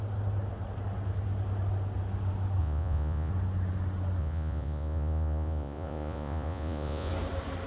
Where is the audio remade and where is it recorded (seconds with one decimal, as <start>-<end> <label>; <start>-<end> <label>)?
0.0-2.6 recorded; 2.6-3.3 remade; 3.3-4.2 recorded; 4.2-7.1 remade; 7.1-7.7 recorded